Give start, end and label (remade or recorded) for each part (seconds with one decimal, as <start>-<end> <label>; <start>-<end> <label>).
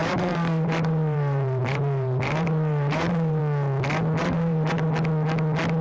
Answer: 0.0-3.4 remade; 3.4-4.2 recorded; 4.2-5.0 remade; 5.0-5.8 recorded